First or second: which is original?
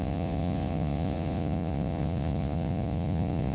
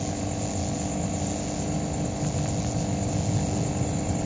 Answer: second